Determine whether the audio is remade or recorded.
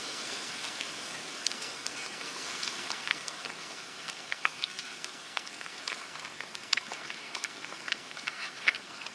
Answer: remade